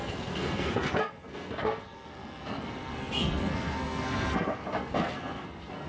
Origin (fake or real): fake